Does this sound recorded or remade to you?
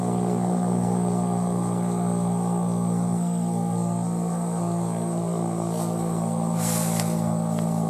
remade